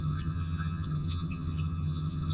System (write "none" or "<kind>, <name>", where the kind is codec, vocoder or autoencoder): vocoder, HiFi-GAN